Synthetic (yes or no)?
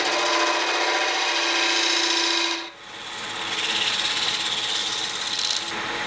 no